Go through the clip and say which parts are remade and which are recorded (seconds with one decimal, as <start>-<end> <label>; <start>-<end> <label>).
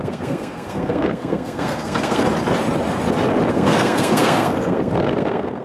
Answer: 0.0-2.2 remade; 2.2-3.5 recorded; 3.5-5.6 remade